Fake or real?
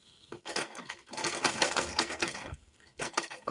fake